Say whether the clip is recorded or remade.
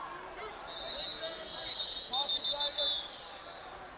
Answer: recorded